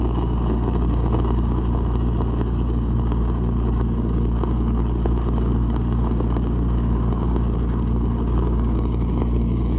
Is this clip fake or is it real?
fake